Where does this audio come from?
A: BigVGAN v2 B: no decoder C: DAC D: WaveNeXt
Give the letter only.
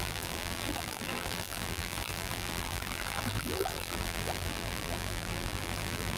A